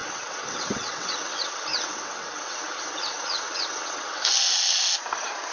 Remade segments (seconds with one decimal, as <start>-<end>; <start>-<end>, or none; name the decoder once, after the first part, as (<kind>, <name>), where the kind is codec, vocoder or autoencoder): 0.0-4.2 (vocoder, WaveNeXt)